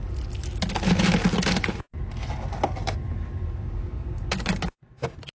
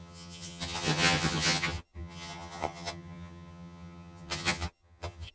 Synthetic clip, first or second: second